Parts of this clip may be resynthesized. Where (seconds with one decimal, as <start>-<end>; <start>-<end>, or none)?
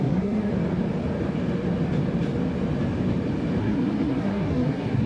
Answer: 0.0-0.5; 3.6-5.1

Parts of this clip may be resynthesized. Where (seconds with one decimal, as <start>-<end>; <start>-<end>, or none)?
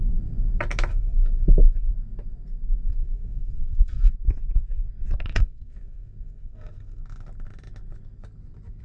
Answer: 0.9-1.9; 2.9-4.1; 5.3-7.0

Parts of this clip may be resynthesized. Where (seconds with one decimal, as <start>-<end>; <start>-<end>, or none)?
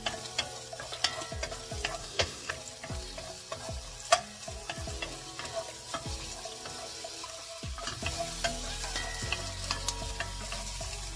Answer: 2.0-2.5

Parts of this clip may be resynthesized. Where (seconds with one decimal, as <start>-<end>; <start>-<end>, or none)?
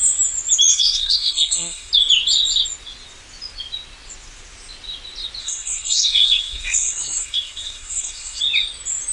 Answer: 0.7-1.9; 5.4-8.4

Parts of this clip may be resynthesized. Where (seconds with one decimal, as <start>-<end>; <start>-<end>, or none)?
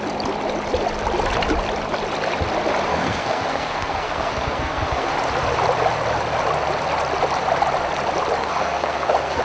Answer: 2.9-5.1; 8.4-9.4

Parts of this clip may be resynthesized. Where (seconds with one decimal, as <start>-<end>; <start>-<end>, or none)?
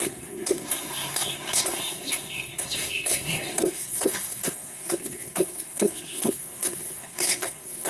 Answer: 0.0-7.9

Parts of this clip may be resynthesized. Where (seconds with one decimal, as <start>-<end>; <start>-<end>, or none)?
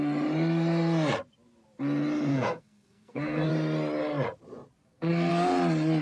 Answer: 2.3-3.5; 4.8-5.3